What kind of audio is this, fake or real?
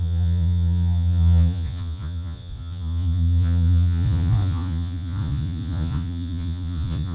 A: fake